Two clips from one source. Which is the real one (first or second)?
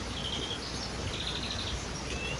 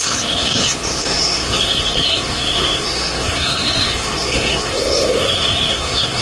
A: first